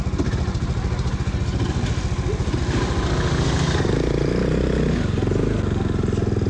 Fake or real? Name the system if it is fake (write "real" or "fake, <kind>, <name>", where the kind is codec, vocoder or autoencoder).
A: real